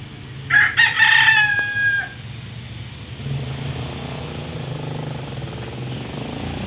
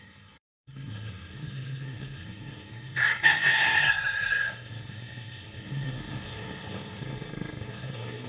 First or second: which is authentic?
first